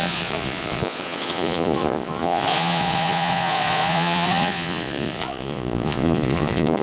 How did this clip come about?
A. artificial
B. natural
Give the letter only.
A